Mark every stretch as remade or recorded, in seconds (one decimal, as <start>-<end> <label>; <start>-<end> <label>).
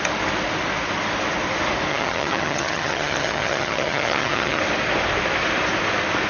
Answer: 0.0-1.9 recorded; 1.9-4.6 remade; 4.6-6.3 recorded